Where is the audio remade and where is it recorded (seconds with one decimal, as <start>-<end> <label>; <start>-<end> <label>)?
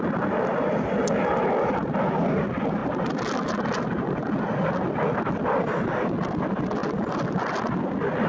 0.0-8.3 recorded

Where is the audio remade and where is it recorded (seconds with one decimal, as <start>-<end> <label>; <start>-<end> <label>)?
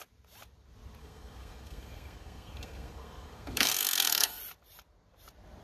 0.0-1.0 recorded; 1.0-4.4 remade; 4.4-5.6 recorded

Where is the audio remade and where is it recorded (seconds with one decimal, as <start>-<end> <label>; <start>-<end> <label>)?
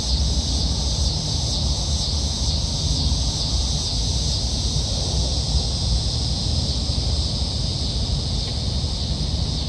0.0-9.7 recorded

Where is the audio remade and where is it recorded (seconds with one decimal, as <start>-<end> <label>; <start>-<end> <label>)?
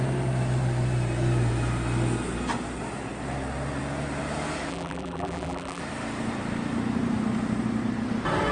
0.0-4.7 recorded; 4.7-5.8 remade; 5.8-8.5 recorded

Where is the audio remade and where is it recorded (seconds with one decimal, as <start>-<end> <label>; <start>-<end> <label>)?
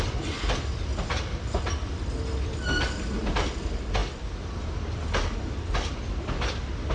0.0-6.9 recorded